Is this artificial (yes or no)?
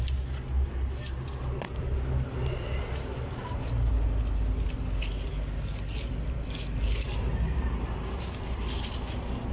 no